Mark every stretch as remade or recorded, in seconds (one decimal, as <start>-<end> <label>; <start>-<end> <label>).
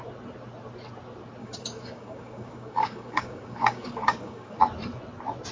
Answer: 0.0-1.4 recorded; 1.4-4.6 remade; 4.6-5.5 recorded